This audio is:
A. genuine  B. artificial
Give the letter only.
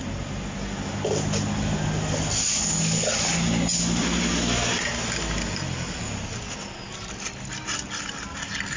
A